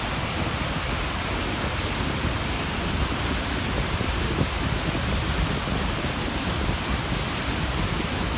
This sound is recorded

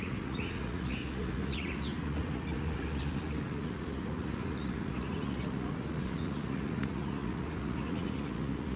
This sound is remade